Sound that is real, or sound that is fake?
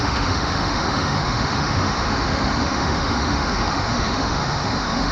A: fake